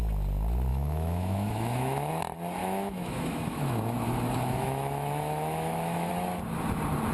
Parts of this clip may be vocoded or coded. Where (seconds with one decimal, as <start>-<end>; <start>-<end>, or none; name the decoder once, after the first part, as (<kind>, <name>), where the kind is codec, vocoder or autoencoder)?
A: 0.7-2.1 (autoencoder, DAC-VAE); 2.6-6.1

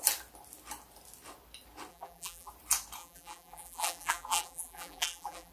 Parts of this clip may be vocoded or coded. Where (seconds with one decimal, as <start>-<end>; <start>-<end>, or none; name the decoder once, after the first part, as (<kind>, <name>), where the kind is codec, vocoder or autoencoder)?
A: 1.9-2.5 (vocoder, BigVGAN v2); 3.0-5.5

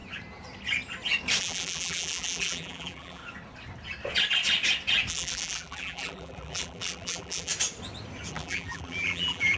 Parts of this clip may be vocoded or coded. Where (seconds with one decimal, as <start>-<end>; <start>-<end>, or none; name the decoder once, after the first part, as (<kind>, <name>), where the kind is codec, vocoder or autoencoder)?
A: 1.4-3.2 (vocoder, BigVGAN v2); 5.1-7.5; 8.3-9.6